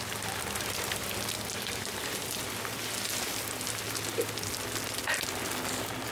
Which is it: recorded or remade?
recorded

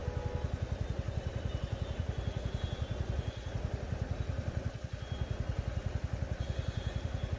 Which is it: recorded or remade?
recorded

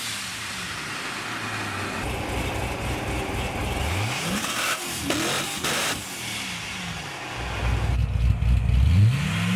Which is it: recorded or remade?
recorded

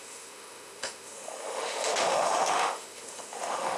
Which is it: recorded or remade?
remade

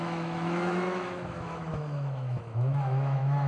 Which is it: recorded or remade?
remade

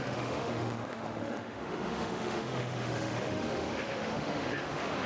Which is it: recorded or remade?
remade